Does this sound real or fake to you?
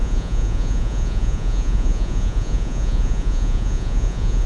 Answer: fake